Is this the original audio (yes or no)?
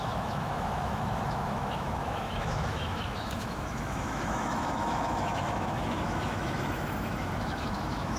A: no